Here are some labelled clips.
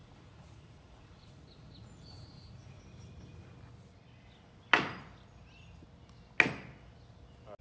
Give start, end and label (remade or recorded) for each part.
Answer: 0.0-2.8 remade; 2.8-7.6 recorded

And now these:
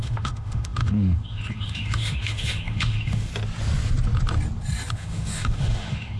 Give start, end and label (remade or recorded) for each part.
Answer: 0.0-3.3 remade; 3.3-4.9 recorded; 4.9-6.2 remade

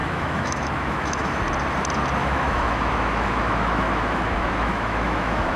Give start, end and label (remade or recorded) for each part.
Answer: 0.0-1.4 remade; 1.4-2.2 recorded; 2.2-5.6 remade

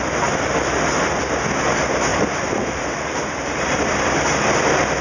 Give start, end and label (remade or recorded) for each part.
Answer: 0.0-2.1 recorded; 2.1-3.8 remade; 3.8-5.0 recorded